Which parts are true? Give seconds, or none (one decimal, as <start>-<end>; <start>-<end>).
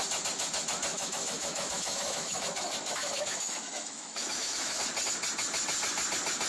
0.0-0.9; 4.8-6.5